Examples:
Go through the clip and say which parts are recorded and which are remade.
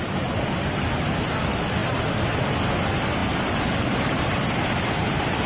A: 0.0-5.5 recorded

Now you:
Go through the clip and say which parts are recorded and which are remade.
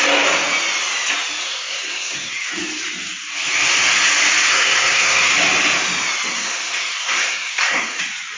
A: 0.0-1.4 recorded; 1.4-2.5 remade; 2.5-4.5 recorded; 4.5-5.3 remade; 5.3-6.3 recorded; 6.3-8.0 remade; 8.0-8.4 recorded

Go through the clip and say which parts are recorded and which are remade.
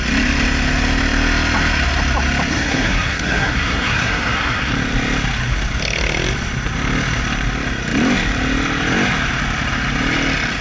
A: 0.0-2.5 recorded; 2.5-4.7 remade; 4.7-10.6 recorded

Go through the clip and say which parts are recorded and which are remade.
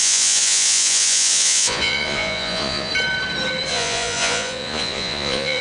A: 0.0-2.9 remade; 2.9-3.7 recorded; 3.7-5.6 remade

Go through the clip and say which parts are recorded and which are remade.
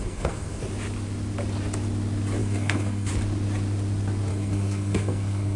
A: 0.0-0.6 remade; 0.6-2.4 recorded; 2.4-3.1 remade; 3.1-4.3 recorded; 4.3-5.6 remade